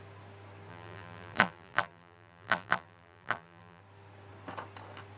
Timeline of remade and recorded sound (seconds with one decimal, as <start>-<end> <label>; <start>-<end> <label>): 0.0-0.7 recorded; 0.7-3.8 remade; 3.8-5.2 recorded